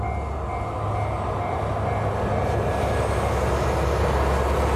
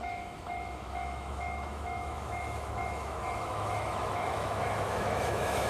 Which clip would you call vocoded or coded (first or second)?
second